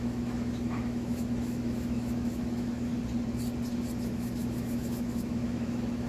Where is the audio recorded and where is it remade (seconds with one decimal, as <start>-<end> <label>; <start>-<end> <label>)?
0.0-2.9 remade; 2.9-4.0 recorded; 4.0-6.1 remade